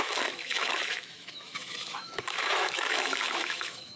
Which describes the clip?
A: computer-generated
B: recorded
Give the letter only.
A